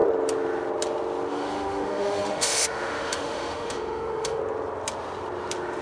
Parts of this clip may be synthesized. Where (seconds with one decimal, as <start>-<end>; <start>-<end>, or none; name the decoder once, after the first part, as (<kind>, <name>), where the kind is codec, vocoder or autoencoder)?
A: 1.3-4.4 (autoencoder, DAC-VAE)